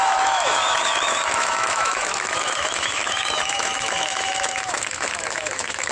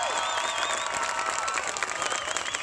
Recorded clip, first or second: second